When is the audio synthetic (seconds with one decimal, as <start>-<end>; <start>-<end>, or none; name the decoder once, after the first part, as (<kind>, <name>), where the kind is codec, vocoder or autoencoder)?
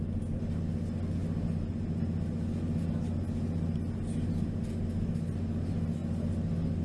none